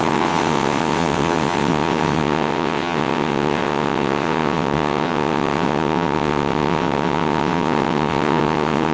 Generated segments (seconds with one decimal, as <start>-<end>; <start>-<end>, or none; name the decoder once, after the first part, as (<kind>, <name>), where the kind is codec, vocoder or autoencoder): 0.0-8.9 (vocoder, WaveNeXt)